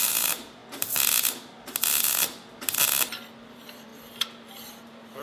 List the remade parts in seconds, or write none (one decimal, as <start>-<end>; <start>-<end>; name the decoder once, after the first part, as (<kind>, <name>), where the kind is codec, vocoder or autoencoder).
0.0-0.6 (vocoder, BigVGAN v2); 3.4-5.2